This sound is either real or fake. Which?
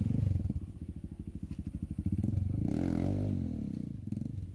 real